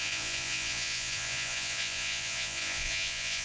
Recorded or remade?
remade